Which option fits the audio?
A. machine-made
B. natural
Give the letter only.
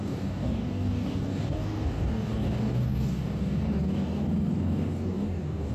A